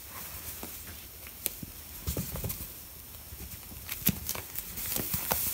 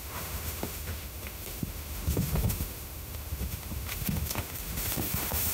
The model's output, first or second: second